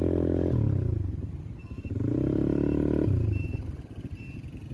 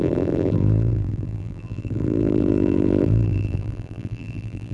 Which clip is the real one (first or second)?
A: first